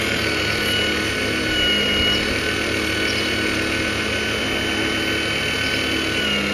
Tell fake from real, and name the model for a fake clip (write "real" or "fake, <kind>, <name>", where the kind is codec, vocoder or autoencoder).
real